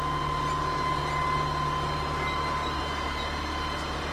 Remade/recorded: recorded